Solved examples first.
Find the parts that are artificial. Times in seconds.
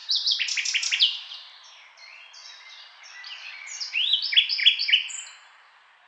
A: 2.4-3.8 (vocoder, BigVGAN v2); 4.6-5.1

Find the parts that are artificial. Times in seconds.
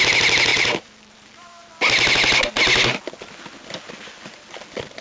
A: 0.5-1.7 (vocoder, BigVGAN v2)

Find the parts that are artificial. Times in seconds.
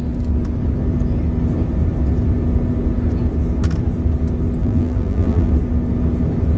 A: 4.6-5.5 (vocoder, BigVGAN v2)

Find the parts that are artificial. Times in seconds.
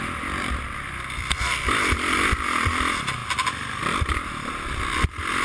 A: 0.0-3.2 (vocoder, BigVGAN v2); 4.5-5.4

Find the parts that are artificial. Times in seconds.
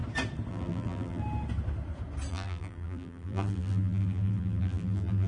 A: 0.5-1.2 (vocoder, BigVGAN v2); 2.3-5.3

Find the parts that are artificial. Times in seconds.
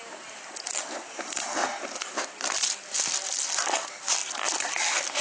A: none